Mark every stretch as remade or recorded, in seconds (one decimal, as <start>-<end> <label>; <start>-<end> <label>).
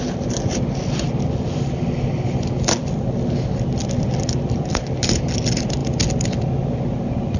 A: 0.0-7.4 recorded